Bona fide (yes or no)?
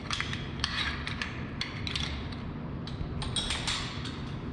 yes